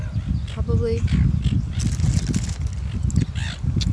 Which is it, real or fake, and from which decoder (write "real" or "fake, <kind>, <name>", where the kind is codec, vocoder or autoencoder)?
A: real